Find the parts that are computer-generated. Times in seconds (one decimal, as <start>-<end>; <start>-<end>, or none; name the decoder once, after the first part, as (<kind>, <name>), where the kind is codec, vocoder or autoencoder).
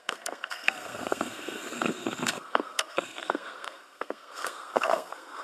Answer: 0.0-5.4 (codec, SNAC)